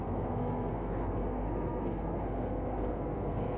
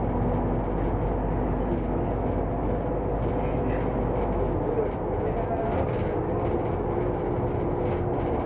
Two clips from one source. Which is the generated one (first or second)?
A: first